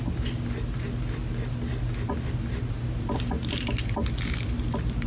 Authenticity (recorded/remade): recorded